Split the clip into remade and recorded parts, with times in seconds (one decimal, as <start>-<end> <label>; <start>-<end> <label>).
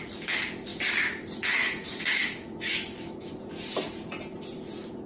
0.0-1.6 recorded; 1.6-3.3 remade; 3.3-5.1 recorded